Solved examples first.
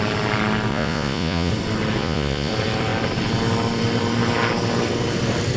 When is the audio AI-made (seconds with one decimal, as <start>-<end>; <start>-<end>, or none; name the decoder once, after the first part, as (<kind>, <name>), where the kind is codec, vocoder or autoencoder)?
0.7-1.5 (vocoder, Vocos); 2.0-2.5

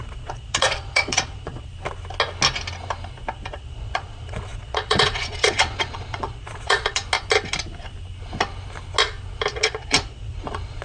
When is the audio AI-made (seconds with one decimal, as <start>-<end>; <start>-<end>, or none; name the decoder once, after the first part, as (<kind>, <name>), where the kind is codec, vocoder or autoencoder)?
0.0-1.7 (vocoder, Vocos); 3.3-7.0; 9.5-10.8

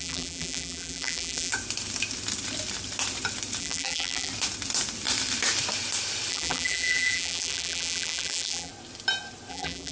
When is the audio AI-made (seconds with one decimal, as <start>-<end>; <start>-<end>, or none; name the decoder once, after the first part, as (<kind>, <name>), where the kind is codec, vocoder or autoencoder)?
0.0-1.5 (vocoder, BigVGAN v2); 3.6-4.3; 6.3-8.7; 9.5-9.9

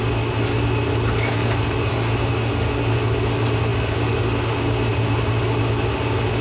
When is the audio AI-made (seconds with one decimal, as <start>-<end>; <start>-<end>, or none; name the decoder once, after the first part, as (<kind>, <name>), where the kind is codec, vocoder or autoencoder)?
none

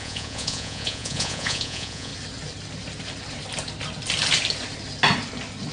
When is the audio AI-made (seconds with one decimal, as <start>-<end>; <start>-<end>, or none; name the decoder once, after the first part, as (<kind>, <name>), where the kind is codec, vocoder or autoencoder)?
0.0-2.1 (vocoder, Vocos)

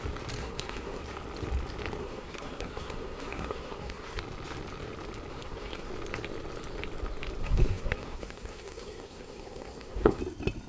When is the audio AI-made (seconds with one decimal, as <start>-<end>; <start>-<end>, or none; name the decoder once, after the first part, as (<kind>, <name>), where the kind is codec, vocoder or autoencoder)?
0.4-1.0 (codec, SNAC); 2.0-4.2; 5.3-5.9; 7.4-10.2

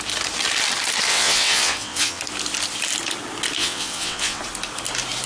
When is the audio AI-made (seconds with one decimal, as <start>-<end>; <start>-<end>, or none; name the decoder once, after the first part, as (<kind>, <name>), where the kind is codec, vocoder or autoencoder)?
1.1-2.2 (vocoder, WaveNeXt); 3.6-4.4